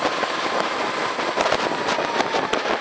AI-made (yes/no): no